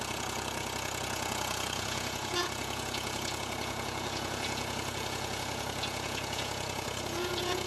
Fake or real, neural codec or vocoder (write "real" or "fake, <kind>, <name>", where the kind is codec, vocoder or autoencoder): fake, vocoder, Vocos